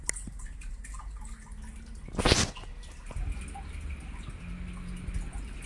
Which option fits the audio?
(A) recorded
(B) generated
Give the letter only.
A